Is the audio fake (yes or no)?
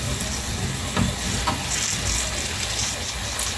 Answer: no